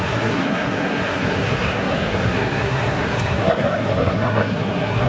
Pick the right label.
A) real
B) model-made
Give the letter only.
B